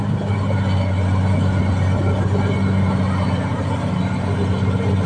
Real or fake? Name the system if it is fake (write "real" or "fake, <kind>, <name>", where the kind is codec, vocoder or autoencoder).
real